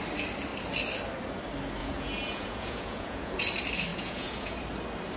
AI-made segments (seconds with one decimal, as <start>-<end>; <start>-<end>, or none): 1.8-3.4; 3.9-4.6